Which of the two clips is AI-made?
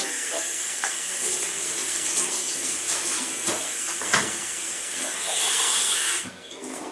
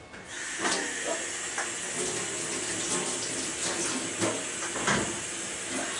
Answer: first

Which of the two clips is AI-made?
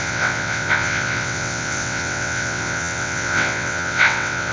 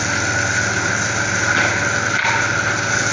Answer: first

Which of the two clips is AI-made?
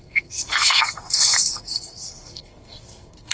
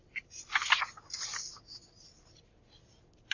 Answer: first